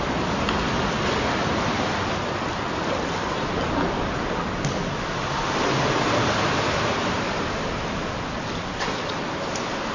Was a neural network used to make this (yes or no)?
no